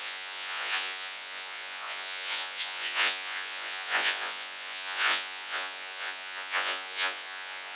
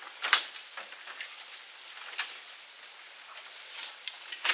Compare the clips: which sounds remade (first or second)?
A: first